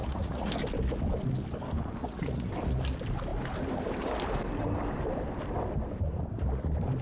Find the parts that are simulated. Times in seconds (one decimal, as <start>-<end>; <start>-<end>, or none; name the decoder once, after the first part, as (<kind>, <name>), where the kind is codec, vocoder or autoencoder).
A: 0.0-0.5 (vocoder, Vocos); 2.0-2.5

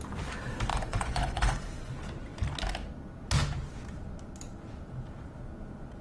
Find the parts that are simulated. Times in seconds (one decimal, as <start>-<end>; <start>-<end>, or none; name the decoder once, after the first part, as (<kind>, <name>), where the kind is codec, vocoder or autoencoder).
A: 0.7-1.9 (vocoder, Vocos)

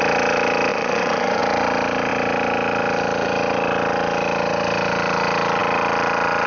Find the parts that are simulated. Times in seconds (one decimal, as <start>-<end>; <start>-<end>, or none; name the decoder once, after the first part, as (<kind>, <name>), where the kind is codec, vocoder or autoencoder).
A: 0.7-1.4 (vocoder, Vocos)

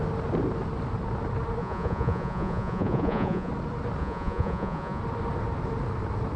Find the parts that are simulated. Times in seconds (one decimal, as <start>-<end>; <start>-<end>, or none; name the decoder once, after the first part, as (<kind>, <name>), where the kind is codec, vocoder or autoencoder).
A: 1.6-3.5 (vocoder, Vocos); 4.0-5.0